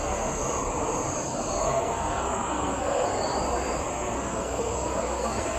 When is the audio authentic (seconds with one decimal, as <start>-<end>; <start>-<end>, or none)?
0.4-1.6; 3.1-3.9